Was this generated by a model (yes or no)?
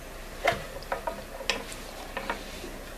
no